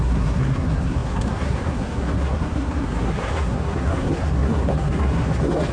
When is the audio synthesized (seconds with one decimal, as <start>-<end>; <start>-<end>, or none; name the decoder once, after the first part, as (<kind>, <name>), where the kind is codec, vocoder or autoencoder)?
0.0-5.7 (codec, SNAC)